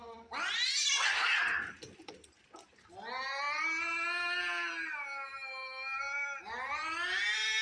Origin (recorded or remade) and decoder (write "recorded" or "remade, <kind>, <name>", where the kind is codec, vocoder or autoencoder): recorded